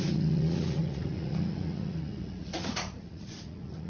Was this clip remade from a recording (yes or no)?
yes